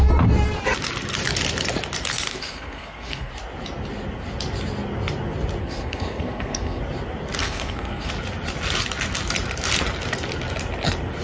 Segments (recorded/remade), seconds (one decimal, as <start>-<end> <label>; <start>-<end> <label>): 0.0-2.3 recorded; 2.3-3.3 remade; 3.3-5.6 recorded; 5.6-6.8 remade; 6.8-7.4 recorded; 7.4-8.1 remade; 8.1-11.2 recorded

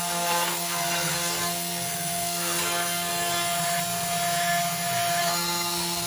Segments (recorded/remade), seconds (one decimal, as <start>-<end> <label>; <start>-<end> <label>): 0.0-3.1 remade; 3.1-5.2 recorded; 5.2-6.1 remade

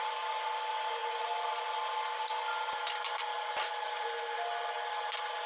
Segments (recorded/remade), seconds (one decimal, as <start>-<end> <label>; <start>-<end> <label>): 0.0-5.5 recorded